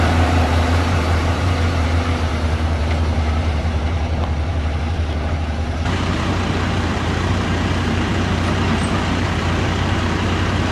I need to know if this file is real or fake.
fake